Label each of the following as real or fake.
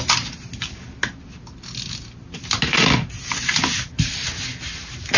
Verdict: real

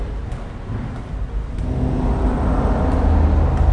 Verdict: real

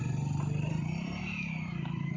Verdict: fake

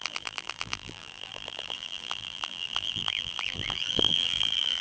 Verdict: fake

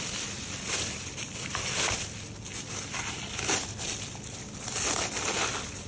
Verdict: fake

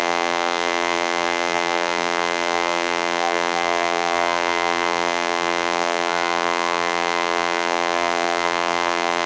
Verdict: fake